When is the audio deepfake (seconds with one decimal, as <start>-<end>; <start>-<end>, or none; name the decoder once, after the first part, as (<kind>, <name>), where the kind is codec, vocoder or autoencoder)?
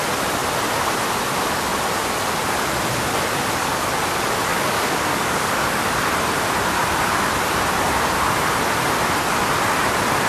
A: 4.5-5.9 (codec, DAC)